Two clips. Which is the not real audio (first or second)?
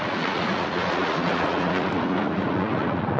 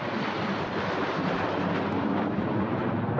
first